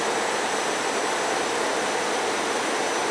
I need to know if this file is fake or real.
fake